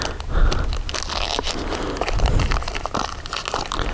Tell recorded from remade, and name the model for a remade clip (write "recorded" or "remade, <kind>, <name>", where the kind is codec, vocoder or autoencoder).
recorded